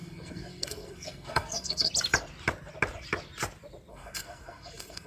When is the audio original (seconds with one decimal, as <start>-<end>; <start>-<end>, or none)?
1.9-3.9